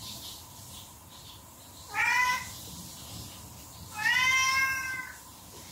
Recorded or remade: recorded